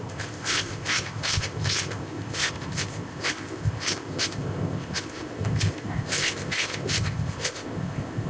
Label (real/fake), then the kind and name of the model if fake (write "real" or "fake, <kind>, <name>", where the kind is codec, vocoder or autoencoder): fake, codec, ZipCodec